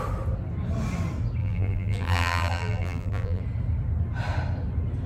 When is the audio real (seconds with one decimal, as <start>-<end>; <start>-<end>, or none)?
0.0-1.4; 3.4-5.1